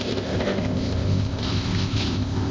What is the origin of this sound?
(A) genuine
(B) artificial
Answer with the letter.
B